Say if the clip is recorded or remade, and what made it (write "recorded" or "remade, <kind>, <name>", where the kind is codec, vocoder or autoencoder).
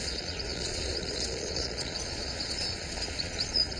remade, vocoder, Vocos